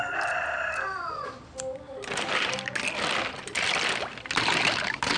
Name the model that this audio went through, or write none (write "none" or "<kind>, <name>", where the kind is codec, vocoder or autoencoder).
none